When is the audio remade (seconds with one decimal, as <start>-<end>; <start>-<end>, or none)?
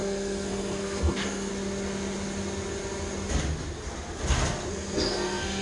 0.0-1.5; 4.7-5.6